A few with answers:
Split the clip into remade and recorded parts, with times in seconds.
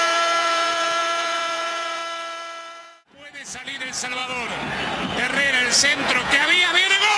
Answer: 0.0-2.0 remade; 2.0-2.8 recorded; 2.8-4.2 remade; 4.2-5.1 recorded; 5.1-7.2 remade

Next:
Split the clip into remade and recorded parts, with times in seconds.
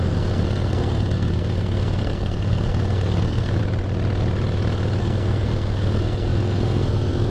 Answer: 0.0-3.6 remade; 3.6-5.0 recorded; 5.0-7.3 remade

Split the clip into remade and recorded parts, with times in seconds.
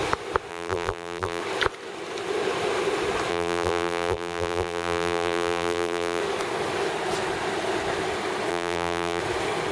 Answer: 0.0-0.5 recorded; 0.5-1.4 remade; 1.4-3.3 recorded; 3.3-6.2 remade; 6.2-8.5 recorded; 8.5-9.2 remade; 9.2-9.7 recorded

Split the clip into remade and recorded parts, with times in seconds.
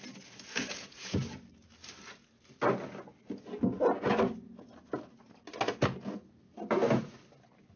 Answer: 0.0-0.5 recorded; 0.5-1.4 remade; 1.4-7.8 recorded